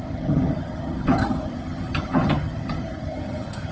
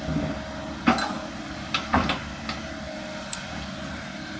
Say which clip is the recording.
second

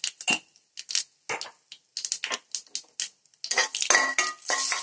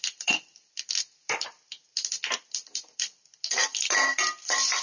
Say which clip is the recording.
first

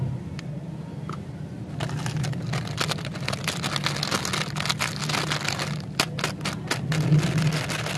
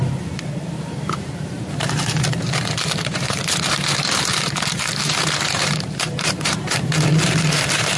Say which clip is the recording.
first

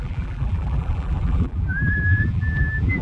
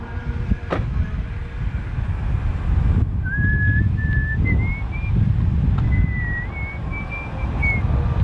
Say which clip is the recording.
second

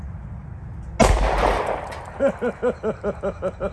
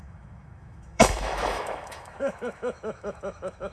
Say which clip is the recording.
first